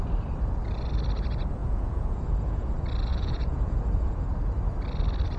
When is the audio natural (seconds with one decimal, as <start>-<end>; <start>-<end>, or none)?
0.0-1.6; 2.7-3.1; 4.1-5.4